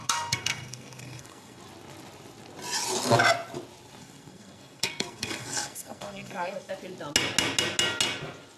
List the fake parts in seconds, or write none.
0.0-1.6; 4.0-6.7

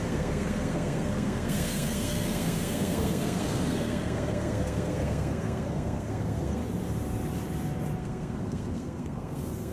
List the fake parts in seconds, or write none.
0.0-6.6; 8.0-9.7

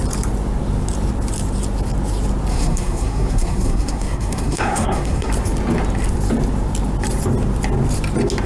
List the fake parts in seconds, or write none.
2.5-5.3

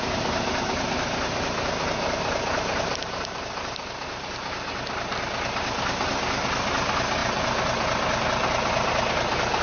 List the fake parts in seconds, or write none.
none

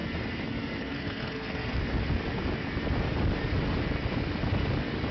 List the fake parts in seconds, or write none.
0.8-1.8

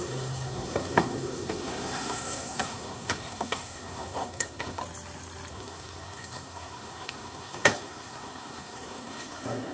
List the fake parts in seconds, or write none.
0.0-4.8; 5.5-9.7

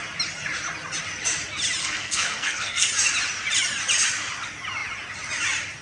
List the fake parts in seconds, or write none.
1.8-2.9